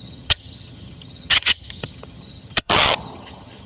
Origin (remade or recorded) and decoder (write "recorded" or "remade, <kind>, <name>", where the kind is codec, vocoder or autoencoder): remade, vocoder, HiFi-GAN